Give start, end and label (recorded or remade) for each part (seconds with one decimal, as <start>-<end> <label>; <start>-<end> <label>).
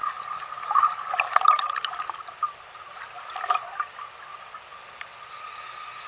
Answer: 0.0-6.1 recorded